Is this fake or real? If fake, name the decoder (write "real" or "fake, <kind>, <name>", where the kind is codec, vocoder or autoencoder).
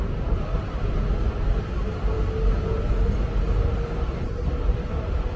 real